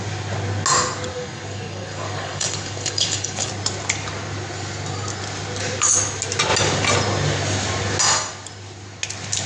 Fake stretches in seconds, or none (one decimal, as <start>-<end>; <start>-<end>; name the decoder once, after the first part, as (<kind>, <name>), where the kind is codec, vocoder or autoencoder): 1.1-3.5 (codec, DAC)